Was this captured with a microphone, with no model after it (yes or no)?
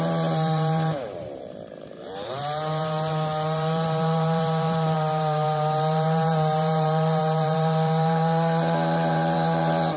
no